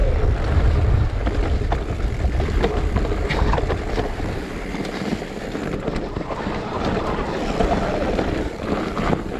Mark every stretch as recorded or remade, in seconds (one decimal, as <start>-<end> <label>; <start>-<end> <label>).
0.0-4.3 recorded; 4.3-9.4 remade